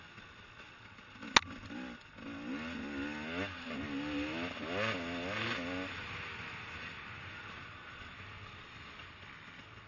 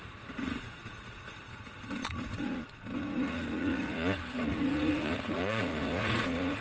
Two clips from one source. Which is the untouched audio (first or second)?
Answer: first